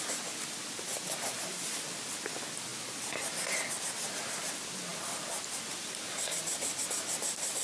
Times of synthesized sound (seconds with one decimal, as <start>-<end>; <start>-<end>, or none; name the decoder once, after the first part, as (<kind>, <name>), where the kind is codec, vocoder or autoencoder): none